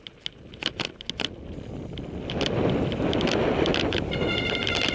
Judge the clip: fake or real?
real